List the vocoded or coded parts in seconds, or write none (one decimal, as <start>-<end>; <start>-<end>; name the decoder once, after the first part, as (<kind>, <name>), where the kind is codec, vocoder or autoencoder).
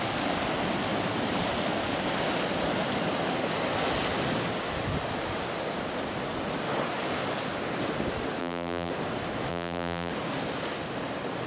8.4-8.9 (vocoder, BigVGAN v2); 9.5-10.1